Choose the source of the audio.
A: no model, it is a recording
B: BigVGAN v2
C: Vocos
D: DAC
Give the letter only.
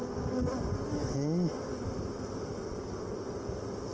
A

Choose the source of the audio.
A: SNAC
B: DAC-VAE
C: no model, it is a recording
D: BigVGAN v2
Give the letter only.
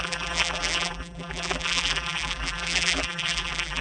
D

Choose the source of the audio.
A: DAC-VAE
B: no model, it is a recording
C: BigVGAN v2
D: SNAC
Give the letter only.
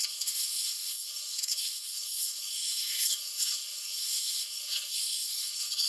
D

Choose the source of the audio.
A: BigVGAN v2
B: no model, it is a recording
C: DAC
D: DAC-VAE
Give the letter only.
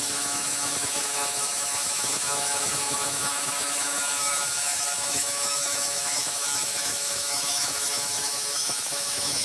D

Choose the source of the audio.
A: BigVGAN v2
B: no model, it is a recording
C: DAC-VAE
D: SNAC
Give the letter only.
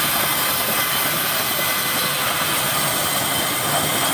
B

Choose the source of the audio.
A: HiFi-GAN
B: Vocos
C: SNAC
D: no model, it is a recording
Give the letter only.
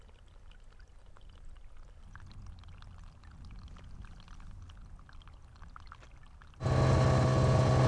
D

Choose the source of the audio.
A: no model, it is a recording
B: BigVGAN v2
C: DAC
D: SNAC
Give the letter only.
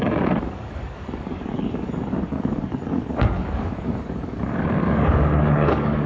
C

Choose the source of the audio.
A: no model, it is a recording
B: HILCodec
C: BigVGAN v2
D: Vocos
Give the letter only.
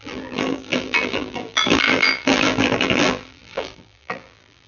C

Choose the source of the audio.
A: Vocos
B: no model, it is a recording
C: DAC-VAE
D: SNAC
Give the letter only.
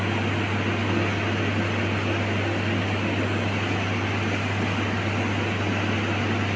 B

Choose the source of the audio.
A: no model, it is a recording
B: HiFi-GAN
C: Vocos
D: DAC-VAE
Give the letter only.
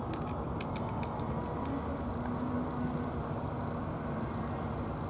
A